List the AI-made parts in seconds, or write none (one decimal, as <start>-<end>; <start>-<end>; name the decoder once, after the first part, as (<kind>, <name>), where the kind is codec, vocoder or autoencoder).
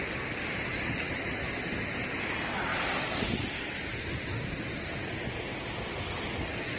none